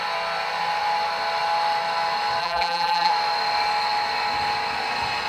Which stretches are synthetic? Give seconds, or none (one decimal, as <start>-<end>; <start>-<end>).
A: 2.4-3.1